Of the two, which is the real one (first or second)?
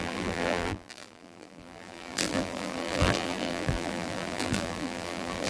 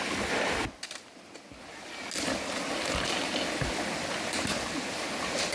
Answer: second